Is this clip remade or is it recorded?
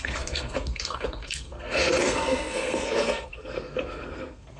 remade